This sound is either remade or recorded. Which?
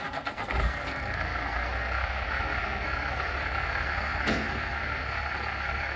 remade